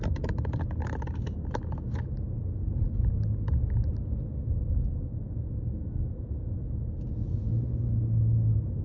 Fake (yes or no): no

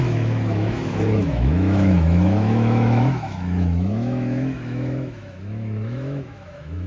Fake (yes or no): yes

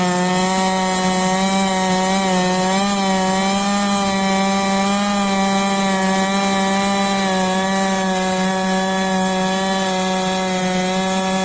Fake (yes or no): no